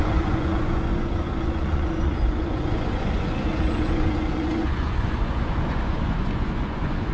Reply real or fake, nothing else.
fake